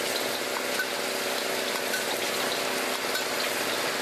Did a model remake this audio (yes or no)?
no